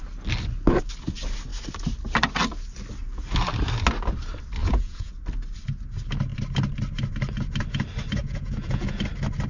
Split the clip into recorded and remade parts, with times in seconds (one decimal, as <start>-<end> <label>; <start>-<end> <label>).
0.0-4.6 recorded; 4.6-5.1 remade; 5.1-8.2 recorded; 8.2-9.0 remade; 9.0-9.5 recorded

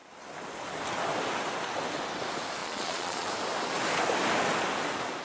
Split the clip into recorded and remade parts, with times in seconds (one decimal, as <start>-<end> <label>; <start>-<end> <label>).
0.0-2.6 recorded; 2.6-3.3 remade; 3.3-5.2 recorded

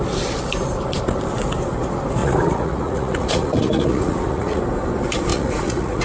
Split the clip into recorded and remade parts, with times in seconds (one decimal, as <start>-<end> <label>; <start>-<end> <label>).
0.0-2.2 recorded; 2.2-4.6 remade; 4.6-5.3 recorded; 5.3-6.0 remade

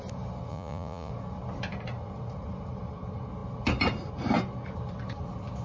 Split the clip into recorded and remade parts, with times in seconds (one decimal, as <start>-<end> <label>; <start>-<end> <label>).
0.0-0.5 recorded; 0.5-1.1 remade; 1.1-5.6 recorded

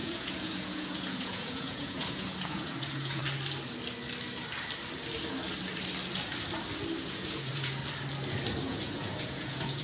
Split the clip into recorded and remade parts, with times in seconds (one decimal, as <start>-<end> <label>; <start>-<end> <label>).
0.0-3.2 remade; 3.2-7.1 recorded; 7.1-7.8 remade; 7.8-8.6 recorded; 8.6-9.8 remade

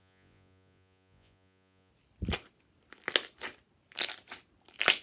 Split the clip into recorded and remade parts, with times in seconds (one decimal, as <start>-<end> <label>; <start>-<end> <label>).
0.0-1.9 remade; 1.9-5.0 recorded

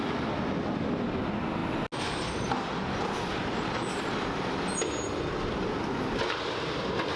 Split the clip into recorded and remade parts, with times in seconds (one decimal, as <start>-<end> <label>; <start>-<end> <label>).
0.0-7.2 recorded

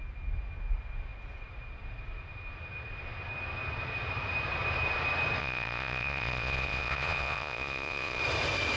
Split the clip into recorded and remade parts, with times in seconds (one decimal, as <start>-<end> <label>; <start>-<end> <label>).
0.0-5.4 recorded; 5.4-8.2 remade; 8.2-8.8 recorded